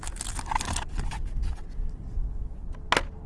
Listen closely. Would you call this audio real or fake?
real